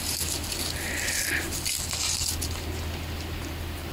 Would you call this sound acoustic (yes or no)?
yes